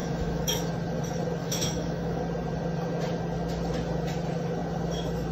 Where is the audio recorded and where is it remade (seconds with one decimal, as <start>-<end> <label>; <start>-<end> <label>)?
0.0-0.7 remade; 0.7-1.4 recorded; 1.4-2.2 remade; 2.2-5.3 recorded